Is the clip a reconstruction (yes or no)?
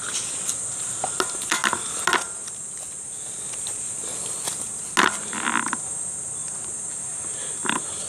no